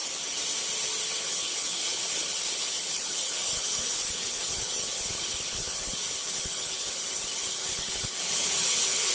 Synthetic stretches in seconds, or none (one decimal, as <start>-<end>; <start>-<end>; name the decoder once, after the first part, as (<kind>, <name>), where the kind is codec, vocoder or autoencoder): 1.2-9.1 (codec, HILCodec)